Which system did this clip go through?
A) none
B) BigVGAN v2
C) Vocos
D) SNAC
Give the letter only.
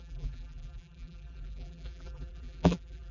B